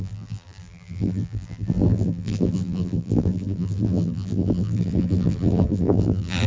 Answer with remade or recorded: remade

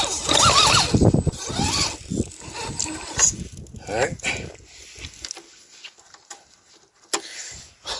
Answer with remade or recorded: recorded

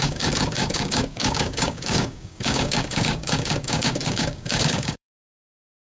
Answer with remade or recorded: remade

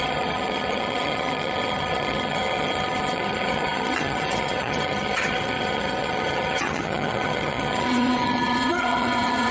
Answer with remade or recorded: remade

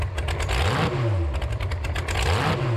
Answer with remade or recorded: recorded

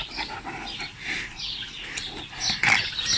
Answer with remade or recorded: recorded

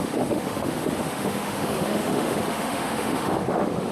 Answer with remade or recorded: remade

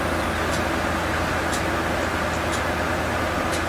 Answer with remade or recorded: recorded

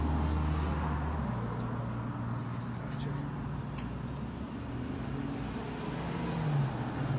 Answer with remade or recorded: recorded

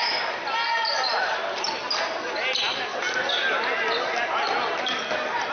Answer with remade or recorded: recorded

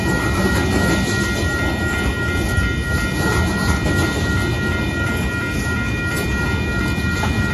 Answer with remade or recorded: recorded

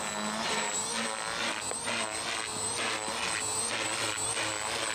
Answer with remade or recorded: recorded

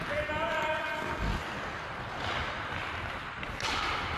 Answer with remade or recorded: recorded